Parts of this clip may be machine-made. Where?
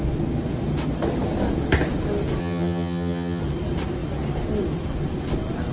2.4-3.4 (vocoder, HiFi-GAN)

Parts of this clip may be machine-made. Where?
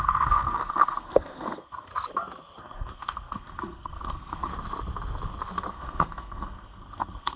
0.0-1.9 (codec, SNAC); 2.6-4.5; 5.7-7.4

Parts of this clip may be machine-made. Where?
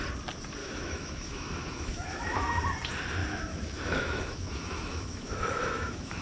0.6-2.6 (autoencoder, DAC-VAE); 3.2-6.2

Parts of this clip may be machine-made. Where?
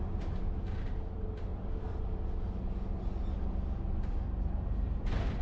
0.0-1.5 (vocoder, BigVGAN v2); 4.0-5.4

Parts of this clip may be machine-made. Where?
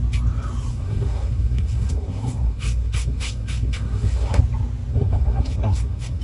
0.7-4.4 (codec, SNAC); 4.9-6.2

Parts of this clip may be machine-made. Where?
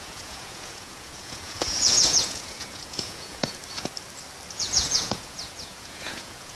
0.0-3.6 (vocoder, Vocos); 4.5-6.5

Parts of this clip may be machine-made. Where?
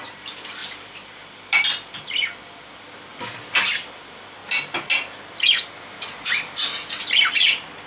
0.6-1.7 (vocoder, BigVGAN v2)